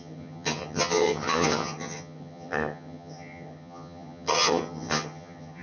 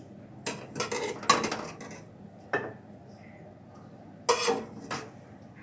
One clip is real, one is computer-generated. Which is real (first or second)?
second